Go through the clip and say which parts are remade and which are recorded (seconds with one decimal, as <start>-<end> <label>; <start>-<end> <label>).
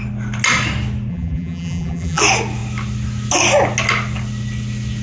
0.0-1.1 recorded; 1.1-2.2 remade; 2.2-5.0 recorded